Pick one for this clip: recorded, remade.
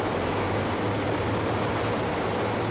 recorded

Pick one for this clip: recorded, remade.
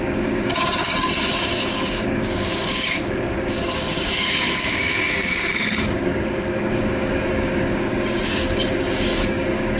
remade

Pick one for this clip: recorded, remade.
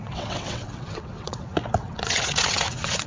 remade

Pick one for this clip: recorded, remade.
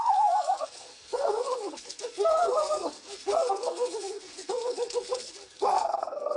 remade